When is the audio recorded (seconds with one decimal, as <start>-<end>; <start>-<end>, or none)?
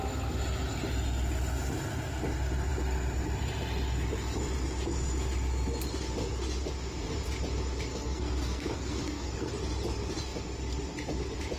0.0-7.9; 9.5-11.6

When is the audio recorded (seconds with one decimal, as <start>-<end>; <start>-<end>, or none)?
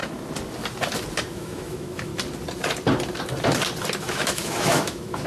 0.0-1.3; 2.1-4.0